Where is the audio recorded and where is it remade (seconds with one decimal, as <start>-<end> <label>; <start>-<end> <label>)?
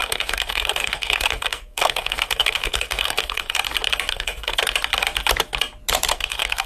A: 0.0-3.6 remade; 3.6-4.1 recorded; 4.1-4.6 remade; 4.6-6.1 recorded; 6.1-6.7 remade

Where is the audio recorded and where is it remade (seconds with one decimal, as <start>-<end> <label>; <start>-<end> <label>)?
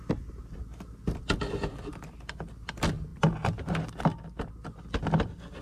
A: 0.0-5.6 recorded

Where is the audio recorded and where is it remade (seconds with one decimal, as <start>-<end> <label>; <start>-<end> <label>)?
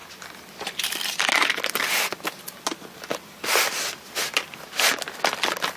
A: 0.0-5.8 recorded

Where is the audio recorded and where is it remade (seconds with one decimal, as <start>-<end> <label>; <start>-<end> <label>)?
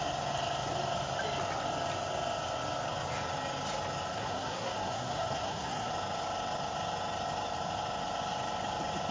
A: 0.0-4.1 recorded; 4.1-5.9 remade; 5.9-9.1 recorded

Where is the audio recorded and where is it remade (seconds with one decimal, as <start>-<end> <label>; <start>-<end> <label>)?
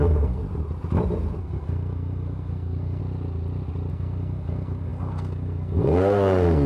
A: 0.0-0.4 remade; 0.4-1.4 recorded; 1.4-3.0 remade; 3.0-3.9 recorded; 3.9-6.7 remade